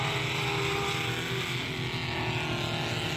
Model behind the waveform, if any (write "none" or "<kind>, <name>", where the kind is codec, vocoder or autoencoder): none